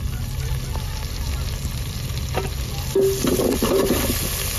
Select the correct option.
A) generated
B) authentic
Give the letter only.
B